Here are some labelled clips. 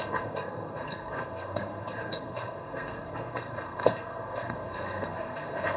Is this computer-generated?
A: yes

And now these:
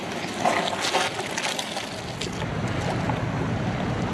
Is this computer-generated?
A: no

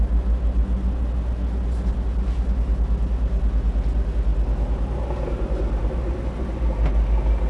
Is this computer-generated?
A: no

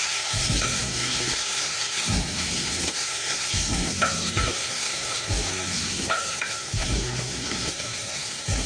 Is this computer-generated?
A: yes